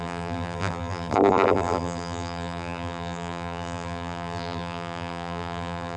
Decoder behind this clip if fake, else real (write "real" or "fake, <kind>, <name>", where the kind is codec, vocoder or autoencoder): fake, vocoder, BigVGAN v2